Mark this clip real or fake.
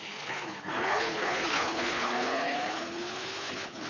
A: fake